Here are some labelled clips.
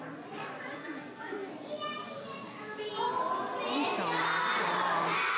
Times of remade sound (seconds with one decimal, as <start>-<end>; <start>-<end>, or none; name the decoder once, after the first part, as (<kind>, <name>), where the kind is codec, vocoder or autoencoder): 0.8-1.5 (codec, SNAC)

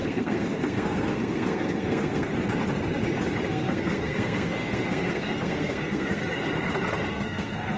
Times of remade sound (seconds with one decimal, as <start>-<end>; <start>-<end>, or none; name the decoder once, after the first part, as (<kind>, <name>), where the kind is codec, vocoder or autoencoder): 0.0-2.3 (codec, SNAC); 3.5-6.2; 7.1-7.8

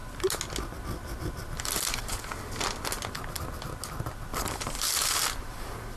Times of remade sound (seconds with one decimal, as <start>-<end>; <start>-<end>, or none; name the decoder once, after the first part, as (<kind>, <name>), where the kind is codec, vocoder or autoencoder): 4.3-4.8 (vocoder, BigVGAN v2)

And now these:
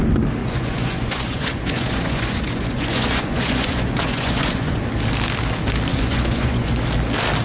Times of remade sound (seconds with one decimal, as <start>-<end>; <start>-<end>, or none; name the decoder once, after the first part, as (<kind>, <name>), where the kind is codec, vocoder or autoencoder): 0.4-4.8 (vocoder, Vocos); 5.9-6.8

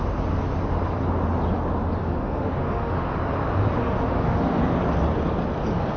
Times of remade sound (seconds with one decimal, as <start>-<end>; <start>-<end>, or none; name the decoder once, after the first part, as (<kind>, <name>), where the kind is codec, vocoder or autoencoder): 2.0-3.1 (autoencoder, DAC-VAE); 3.8-4.6